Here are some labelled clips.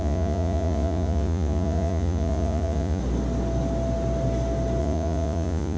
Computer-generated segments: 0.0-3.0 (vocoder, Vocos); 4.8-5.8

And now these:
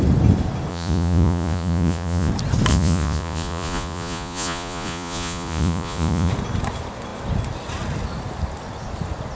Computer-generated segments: 0.7-2.3 (vocoder, Vocos); 2.7-6.3

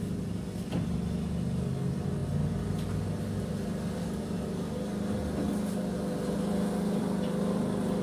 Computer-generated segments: none

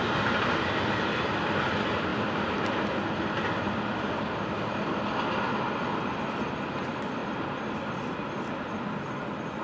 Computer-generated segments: none

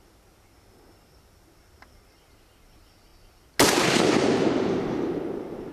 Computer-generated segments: none

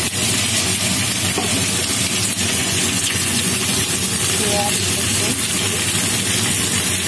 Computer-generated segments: 2.4-3.8 (vocoder, Vocos)

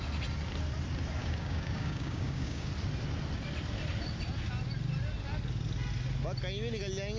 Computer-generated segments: 1.2-2.7 (codec, DAC)